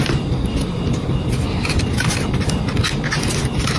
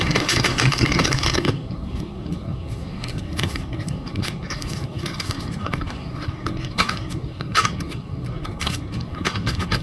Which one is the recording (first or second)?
first